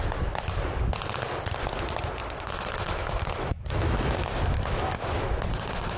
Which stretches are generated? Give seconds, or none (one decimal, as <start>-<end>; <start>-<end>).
2.2-6.0